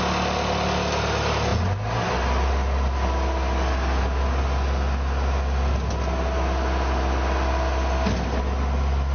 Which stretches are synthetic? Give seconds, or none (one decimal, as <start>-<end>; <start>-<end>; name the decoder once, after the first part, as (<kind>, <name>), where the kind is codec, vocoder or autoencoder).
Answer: none